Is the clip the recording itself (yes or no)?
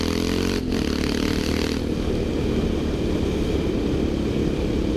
yes